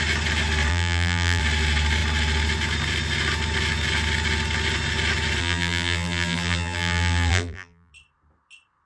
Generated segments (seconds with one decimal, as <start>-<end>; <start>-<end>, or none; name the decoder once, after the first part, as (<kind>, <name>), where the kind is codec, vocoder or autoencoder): 0.7-1.4 (vocoder, BigVGAN v2); 5.4-7.9